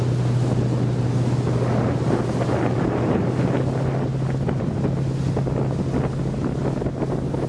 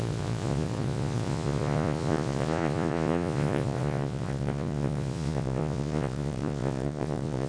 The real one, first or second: first